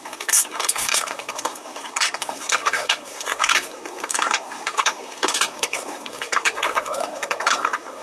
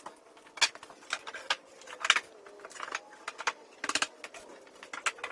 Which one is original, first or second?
second